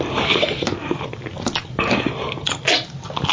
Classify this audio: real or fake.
real